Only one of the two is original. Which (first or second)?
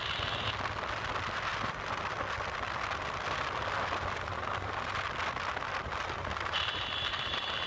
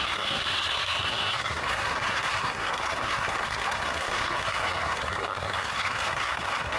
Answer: first